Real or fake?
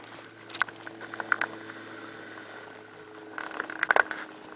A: real